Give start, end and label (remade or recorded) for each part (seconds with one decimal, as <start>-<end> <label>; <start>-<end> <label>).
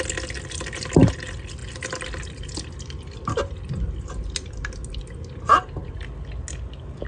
0.0-7.1 recorded